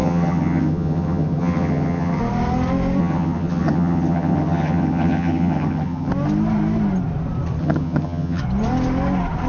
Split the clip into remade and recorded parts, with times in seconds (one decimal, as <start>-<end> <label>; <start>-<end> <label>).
0.0-2.2 remade; 2.2-3.0 recorded; 3.0-6.1 remade; 6.1-7.6 recorded; 7.6-8.4 remade; 8.4-9.5 recorded

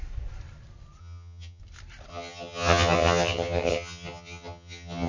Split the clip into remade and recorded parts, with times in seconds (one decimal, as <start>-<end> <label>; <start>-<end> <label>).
0.0-1.0 recorded; 1.0-1.6 remade; 1.6-2.1 recorded; 2.1-5.1 remade

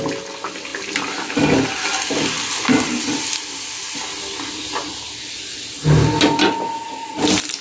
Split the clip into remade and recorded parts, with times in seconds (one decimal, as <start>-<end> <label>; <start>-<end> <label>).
0.0-7.6 recorded

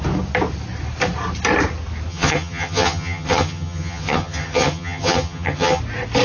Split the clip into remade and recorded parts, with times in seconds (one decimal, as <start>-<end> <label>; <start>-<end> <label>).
0.0-2.1 recorded; 2.1-5.8 remade; 5.8-6.2 recorded

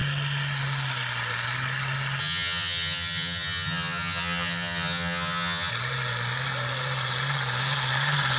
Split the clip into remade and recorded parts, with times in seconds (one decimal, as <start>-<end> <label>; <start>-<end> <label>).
0.0-2.2 recorded; 2.2-5.7 remade; 5.7-8.4 recorded